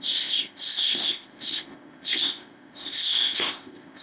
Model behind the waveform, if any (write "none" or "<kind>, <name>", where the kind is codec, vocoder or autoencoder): codec, ZipCodec